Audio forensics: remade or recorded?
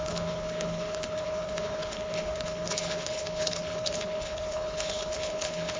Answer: remade